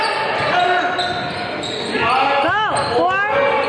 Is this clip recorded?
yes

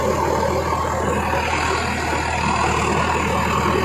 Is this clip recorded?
yes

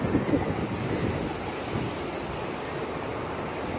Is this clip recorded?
yes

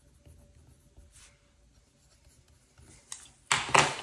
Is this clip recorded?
yes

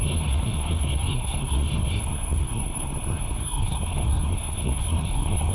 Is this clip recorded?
no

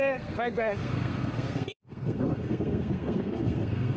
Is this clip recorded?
no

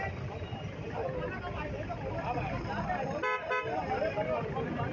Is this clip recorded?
yes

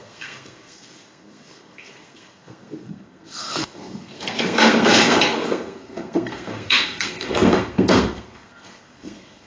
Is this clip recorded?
no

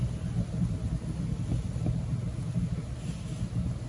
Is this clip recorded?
yes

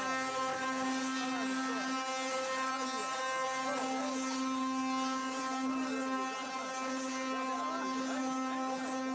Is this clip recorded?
yes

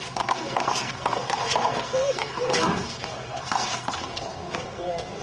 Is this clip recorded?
no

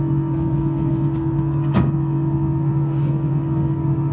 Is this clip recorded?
no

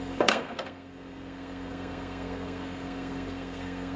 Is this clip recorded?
no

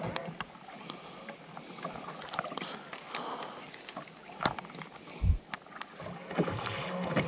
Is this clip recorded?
yes